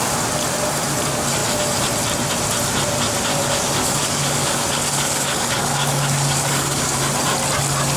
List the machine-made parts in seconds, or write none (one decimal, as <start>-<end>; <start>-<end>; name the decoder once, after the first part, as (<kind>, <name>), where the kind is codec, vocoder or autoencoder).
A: 3.3-7.0 (codec, DAC)

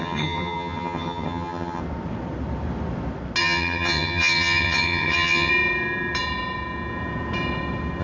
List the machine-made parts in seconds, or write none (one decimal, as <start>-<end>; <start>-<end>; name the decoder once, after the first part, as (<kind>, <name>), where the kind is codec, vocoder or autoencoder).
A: 0.0-1.8 (vocoder, HiFi-GAN); 3.4-5.5

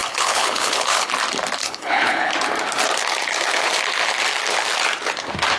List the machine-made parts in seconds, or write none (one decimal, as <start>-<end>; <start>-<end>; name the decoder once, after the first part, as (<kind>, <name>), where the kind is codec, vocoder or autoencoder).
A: 0.0-1.1 (codec, HILCodec); 1.6-2.3

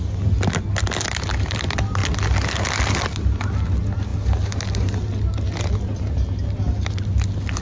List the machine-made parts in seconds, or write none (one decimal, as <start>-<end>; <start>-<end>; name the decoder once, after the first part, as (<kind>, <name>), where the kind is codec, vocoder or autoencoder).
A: none

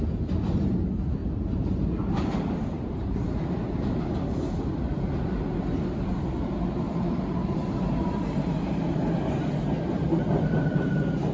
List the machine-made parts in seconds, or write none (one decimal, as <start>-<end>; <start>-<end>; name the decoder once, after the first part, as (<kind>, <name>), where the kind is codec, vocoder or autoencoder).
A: 1.2-3.5 (vocoder, BigVGAN v2); 7.4-8.8; 10.0-11.3